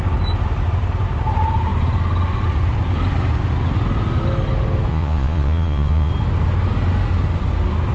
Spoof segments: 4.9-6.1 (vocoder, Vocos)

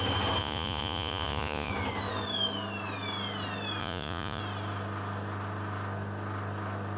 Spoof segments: 0.4-1.7 (vocoder, Vocos); 3.8-4.4

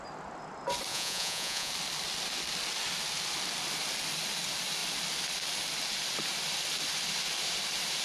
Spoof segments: 0.9-1.7 (vocoder, Vocos)

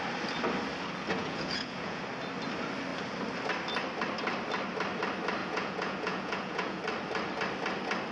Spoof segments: 1.2-2.0 (vocoder, Vocos); 5.4-6.8

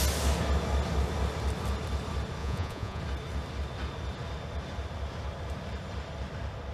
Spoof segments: 2.4-3.0 (vocoder, Vocos)

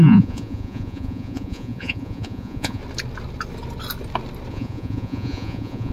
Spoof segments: 0.0-2.8 (vocoder, Vocos); 4.5-5.9